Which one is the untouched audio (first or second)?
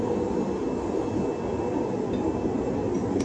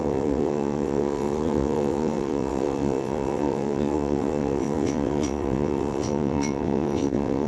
first